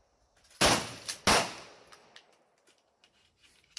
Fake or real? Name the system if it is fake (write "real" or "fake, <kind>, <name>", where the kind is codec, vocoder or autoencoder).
real